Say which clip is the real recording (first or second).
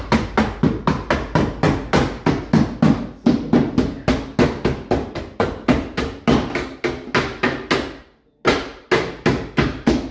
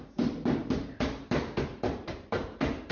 first